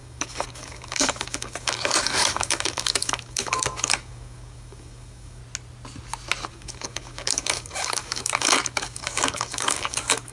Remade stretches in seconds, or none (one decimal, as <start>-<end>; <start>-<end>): 0.0-5.4; 6.5-10.3